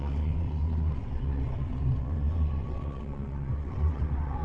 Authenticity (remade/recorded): remade